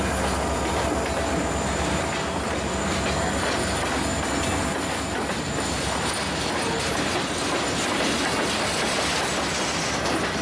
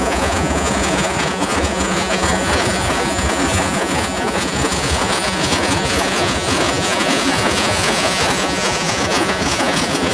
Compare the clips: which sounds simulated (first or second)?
second